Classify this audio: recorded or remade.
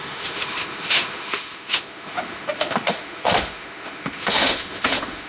remade